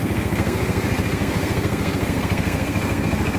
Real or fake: fake